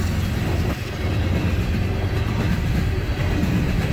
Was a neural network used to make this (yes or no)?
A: no